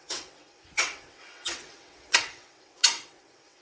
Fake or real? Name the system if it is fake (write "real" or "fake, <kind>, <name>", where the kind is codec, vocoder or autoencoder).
fake, vocoder, WaveNeXt